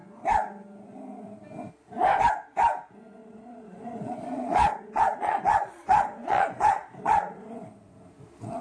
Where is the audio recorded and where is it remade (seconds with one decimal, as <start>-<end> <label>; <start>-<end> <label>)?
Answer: 0.0-3.2 recorded; 3.2-7.5 remade; 7.5-8.6 recorded